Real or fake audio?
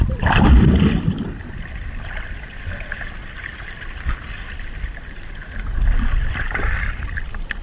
real